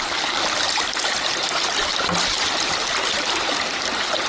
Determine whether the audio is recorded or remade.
recorded